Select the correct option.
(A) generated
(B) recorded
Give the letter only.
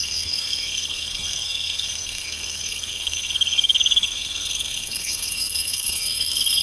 A